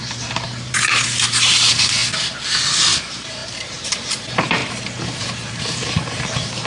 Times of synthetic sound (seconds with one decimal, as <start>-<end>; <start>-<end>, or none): 0.0-2.0; 3.0-6.7